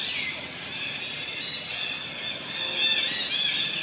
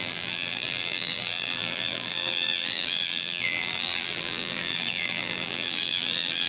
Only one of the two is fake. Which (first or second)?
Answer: second